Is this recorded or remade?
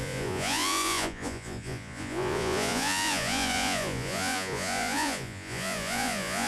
remade